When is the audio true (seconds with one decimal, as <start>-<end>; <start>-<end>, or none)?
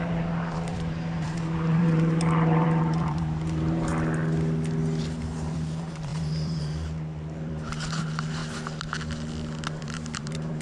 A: 3.9-5.0; 8.4-9.8